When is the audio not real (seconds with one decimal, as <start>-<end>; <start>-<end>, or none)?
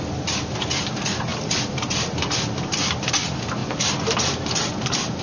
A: 1.3-3.1